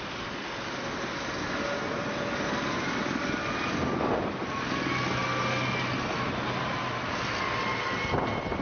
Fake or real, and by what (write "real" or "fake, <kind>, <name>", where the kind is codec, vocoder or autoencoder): real